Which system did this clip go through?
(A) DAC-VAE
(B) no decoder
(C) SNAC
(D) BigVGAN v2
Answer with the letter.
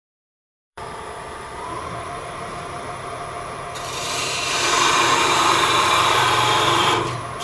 D